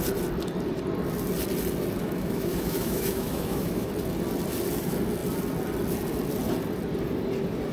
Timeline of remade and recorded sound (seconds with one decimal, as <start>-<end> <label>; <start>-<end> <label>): 0.0-2.0 recorded; 2.0-3.9 remade; 3.9-7.7 recorded